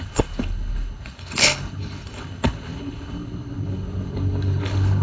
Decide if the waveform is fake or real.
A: fake